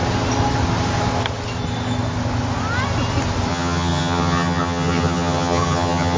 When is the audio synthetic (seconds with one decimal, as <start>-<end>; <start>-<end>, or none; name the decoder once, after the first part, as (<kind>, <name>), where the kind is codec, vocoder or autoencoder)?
3.5-6.2 (vocoder, HiFi-GAN)

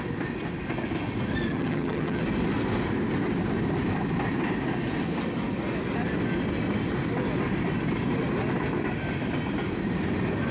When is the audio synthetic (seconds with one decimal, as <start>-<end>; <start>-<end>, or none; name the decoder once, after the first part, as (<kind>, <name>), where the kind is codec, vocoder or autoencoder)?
1.5-2.2 (vocoder, HiFi-GAN)

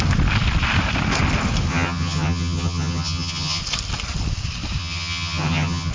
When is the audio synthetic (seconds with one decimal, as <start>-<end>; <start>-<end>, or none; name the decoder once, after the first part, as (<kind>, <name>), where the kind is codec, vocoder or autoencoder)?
1.7-3.6 (vocoder, HiFi-GAN); 4.8-5.9

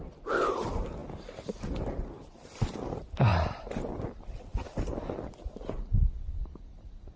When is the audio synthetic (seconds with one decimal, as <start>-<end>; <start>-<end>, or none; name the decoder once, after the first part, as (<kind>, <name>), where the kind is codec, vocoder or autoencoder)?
none

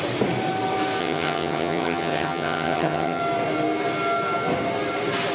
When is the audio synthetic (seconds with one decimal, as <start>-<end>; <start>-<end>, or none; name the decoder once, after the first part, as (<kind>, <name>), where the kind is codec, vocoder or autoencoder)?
1.0-3.2 (vocoder, HiFi-GAN)

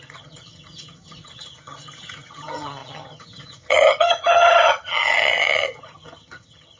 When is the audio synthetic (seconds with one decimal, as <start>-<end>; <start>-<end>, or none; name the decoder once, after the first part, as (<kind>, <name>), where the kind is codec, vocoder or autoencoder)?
0.0-6.8 (vocoder, HiFi-GAN)

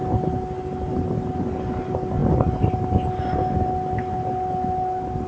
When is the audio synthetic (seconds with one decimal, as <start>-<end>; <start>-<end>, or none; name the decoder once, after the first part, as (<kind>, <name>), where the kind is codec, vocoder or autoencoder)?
none

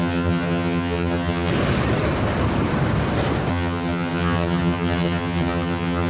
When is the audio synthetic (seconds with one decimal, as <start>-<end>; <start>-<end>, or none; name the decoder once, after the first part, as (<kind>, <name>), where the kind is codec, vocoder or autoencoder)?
0.0-1.5 (vocoder, HiFi-GAN); 3.5-6.1